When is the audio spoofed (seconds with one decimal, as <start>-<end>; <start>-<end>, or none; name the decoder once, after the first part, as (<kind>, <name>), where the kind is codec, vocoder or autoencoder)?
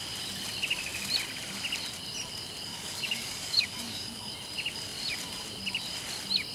2.7-4.3 (codec, DAC)